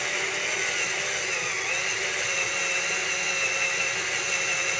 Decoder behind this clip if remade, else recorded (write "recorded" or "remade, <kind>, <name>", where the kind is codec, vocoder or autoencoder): recorded